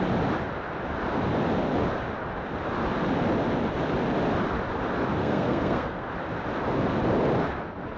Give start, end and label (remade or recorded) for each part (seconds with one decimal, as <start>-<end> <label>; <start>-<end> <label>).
0.0-5.2 recorded; 5.2-6.1 remade; 6.1-8.0 recorded